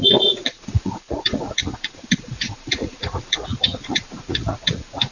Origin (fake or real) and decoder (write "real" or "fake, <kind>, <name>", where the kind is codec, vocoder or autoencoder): fake, vocoder, Vocos